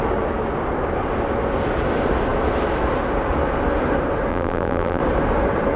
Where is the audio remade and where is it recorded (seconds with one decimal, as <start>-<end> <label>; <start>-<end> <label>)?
0.0-4.3 recorded; 4.3-5.0 remade; 5.0-5.8 recorded